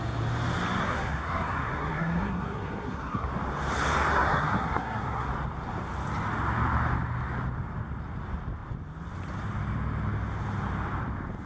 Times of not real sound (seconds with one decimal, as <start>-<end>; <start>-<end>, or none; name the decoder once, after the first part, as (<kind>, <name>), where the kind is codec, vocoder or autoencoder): 0.8-3.3 (codec, SNAC); 4.1-5.3